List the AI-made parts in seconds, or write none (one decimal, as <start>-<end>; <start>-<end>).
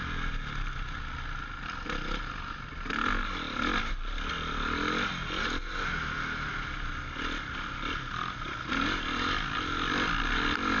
none